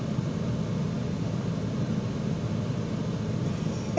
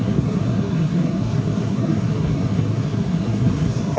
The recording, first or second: first